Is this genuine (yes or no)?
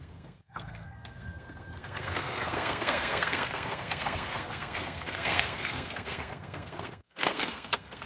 no